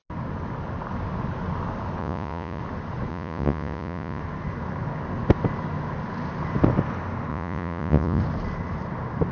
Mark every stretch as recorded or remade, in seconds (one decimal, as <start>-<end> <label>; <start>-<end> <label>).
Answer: 0.0-2.0 recorded; 2.0-2.6 remade; 2.6-3.1 recorded; 3.1-4.2 remade; 4.2-7.3 recorded; 7.3-8.2 remade; 8.2-9.3 recorded